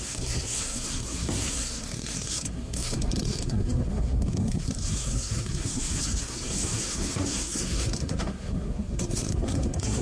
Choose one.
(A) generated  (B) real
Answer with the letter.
A